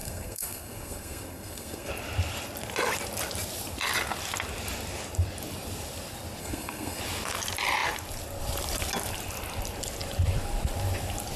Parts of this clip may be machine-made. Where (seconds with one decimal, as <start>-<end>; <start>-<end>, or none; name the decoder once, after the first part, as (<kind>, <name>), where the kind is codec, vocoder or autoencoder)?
0.0-1.9 (codec, SNAC); 6.4-7.0